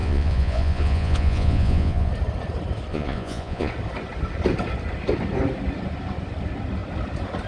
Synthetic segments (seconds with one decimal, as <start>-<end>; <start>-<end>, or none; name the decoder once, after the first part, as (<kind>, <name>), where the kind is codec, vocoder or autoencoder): 0.0-2.1 (vocoder, Vocos); 2.9-3.7